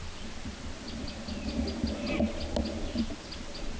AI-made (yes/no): no